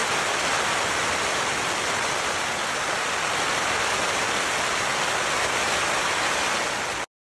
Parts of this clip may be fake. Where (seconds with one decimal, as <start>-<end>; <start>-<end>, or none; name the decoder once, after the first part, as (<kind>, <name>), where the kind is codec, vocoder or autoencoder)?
0.0-4.3 (vocoder, BigVGAN v2)

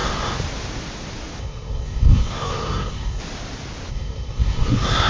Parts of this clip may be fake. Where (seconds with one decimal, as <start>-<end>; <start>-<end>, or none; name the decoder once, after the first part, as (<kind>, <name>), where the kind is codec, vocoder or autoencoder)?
1.4-3.2 (codec, SNAC); 3.9-5.1

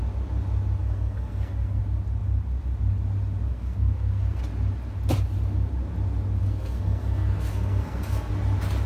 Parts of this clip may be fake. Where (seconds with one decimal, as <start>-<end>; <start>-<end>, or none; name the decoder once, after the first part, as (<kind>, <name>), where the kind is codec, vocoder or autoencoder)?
0.8-1.8 (codec, SNAC); 3.5-4.4; 6.4-8.3

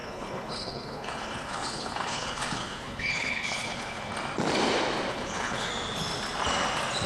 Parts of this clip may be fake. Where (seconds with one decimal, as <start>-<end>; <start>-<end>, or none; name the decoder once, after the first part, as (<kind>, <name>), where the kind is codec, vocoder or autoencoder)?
0.0-4.1 (codec, HILCodec); 5.1-5.7

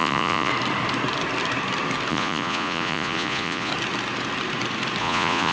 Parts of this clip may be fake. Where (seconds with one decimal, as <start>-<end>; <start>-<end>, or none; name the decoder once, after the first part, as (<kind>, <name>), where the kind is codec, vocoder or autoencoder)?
0.0-0.5 (vocoder, Vocos); 2.1-3.7; 5.0-5.5

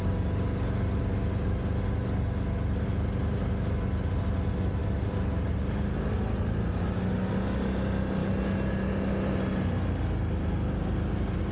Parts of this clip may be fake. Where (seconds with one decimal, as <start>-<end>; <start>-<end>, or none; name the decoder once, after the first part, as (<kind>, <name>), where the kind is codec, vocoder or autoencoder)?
none

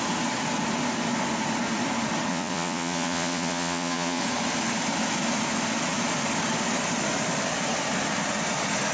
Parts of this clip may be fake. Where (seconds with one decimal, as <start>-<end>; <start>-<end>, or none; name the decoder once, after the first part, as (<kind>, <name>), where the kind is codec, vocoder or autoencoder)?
2.3-4.2 (vocoder, Vocos)